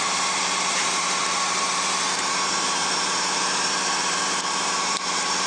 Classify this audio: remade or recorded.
remade